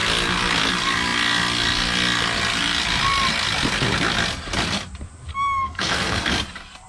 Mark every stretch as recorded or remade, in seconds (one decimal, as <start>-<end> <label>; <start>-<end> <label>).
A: 0.0-5.3 recorded; 5.3-6.3 remade; 6.3-6.9 recorded

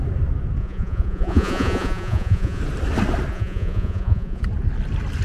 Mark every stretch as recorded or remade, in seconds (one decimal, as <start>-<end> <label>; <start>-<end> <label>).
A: 0.0-0.6 recorded; 0.6-2.6 remade; 2.6-3.3 recorded; 3.3-4.4 remade; 4.4-5.2 recorded

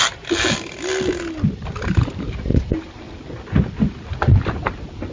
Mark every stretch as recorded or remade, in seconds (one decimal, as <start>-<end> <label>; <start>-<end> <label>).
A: 0.0-5.1 recorded

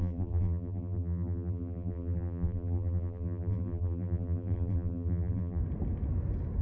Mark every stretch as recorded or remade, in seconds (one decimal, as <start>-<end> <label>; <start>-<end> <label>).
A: 0.0-5.6 remade; 5.6-6.6 recorded

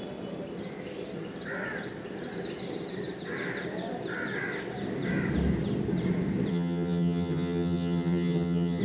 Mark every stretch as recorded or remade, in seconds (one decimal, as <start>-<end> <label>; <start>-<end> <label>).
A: 0.0-6.5 recorded; 6.5-8.8 remade

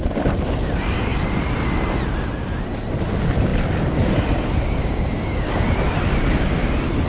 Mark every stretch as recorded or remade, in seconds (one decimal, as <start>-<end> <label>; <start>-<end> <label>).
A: 0.0-4.8 recorded; 4.8-5.7 remade; 5.7-7.1 recorded